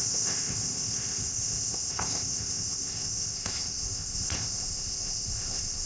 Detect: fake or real fake